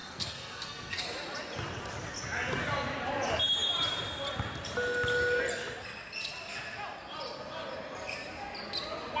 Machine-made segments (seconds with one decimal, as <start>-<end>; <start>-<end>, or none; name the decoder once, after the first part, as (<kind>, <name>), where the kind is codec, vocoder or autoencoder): 0.0-1.0 (codec, SNAC)

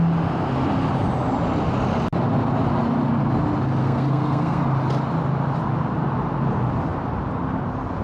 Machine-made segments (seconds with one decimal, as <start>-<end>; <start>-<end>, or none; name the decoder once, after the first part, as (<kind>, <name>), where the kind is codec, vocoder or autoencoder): 3.8-4.6 (codec, SNAC)

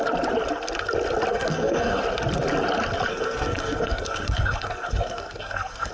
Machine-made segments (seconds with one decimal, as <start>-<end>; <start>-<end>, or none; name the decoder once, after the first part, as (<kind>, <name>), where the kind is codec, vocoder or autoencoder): 1.3-2.0 (codec, SNAC); 3.1-5.9

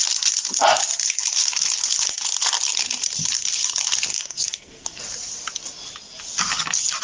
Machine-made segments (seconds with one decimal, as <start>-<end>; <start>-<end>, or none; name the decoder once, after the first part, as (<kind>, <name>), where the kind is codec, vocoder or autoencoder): 4.1-5.0 (codec, SNAC)

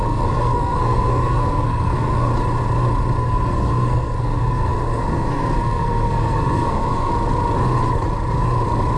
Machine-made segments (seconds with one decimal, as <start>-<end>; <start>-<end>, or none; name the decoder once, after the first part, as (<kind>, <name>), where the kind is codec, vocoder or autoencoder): 0.0-2.3 (codec, SNAC); 3.2-7.1

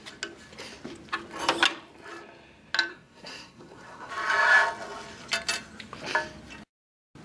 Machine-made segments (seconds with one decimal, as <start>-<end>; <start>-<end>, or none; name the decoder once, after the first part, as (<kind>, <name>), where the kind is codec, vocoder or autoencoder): 2.9-4.1 (codec, SNAC)

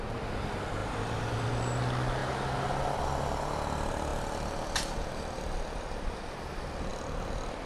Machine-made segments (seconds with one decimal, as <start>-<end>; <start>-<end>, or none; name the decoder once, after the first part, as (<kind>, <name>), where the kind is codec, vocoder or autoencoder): none

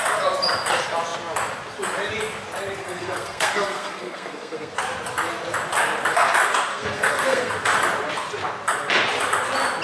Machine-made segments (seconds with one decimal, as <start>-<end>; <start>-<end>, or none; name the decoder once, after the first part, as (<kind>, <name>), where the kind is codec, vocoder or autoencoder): 2.8-4.7 (codec, SNAC); 6.7-7.5